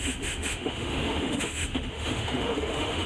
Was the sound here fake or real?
fake